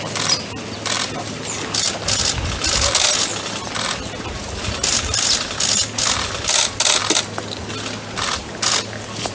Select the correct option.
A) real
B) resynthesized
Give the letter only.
A